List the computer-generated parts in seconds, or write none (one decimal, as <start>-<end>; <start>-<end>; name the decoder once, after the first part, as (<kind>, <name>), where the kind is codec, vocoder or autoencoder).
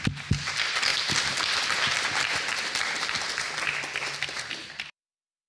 none